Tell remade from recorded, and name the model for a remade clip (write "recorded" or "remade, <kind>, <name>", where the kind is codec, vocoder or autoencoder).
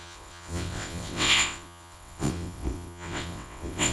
remade, vocoder, WaveNeXt